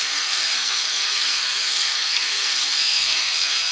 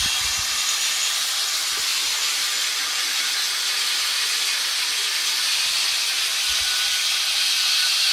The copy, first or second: first